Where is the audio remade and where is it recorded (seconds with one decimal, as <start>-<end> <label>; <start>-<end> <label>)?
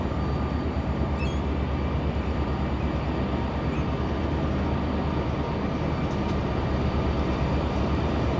0.0-1.3 remade; 1.3-6.2 recorded; 6.2-8.4 remade